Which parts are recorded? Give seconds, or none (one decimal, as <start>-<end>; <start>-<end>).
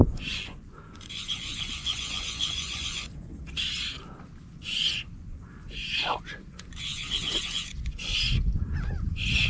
3.3-4.5